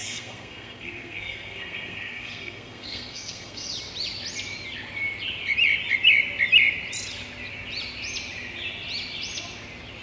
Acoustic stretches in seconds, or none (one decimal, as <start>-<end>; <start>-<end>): 3.7-10.0